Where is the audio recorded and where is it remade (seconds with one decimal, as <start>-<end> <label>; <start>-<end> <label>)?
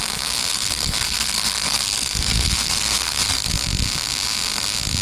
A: 0.0-0.5 recorded; 0.5-3.5 remade; 3.5-5.0 recorded